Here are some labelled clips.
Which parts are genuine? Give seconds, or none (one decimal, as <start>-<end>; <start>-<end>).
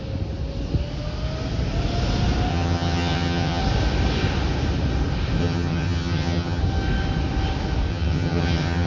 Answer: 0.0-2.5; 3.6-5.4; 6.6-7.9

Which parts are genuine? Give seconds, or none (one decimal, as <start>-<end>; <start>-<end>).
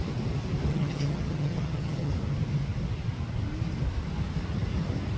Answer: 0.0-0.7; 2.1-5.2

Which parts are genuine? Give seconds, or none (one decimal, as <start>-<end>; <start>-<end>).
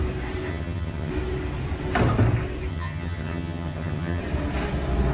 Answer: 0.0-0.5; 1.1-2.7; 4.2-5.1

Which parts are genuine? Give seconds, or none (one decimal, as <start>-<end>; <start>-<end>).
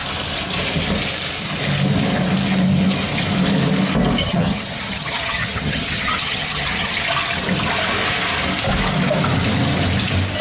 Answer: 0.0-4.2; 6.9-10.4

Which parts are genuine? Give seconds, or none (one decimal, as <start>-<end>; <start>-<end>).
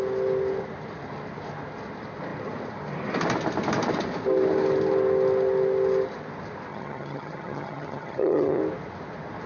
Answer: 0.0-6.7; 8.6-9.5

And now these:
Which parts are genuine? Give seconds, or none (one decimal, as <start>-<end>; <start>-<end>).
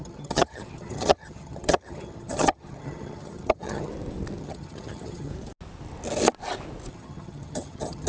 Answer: 3.9-4.4; 5.3-6.9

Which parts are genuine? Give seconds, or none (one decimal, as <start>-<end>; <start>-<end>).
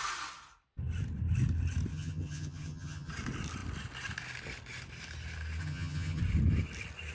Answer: 0.0-1.9; 3.1-5.6; 6.2-7.1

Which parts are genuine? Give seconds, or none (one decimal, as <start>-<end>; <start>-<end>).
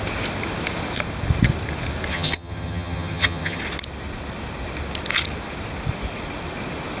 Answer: 0.0-2.1; 3.6-7.0